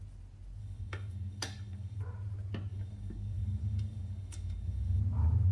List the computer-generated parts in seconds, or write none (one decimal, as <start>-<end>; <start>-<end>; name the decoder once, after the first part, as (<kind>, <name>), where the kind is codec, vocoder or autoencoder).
0.6-2.0 (codec, DAC); 2.7-5.0